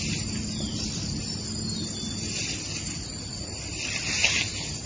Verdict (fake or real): real